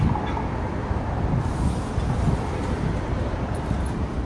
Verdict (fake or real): real